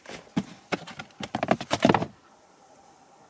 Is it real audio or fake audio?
real